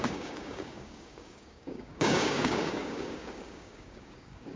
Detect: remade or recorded remade